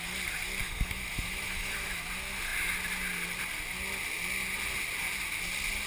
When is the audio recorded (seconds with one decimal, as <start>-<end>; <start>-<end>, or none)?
0.0-0.6; 2.1-5.9